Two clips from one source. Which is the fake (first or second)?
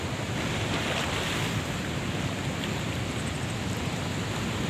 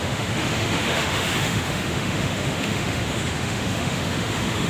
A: second